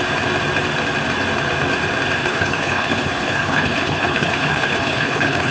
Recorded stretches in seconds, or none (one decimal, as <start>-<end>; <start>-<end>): 0.0-2.2